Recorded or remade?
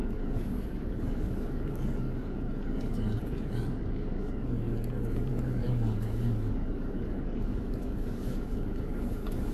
remade